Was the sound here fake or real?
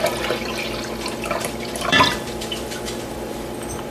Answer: fake